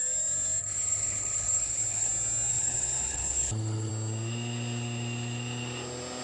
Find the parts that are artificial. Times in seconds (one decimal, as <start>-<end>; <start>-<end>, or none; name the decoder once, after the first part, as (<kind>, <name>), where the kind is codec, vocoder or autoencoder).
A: 0.6-2.1 (codec, HILCodec); 2.5-3.9